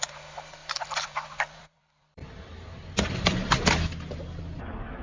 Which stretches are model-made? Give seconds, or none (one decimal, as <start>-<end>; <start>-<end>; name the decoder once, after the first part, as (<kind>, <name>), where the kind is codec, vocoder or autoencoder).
0.6-3.6 (vocoder, BigVGAN v2)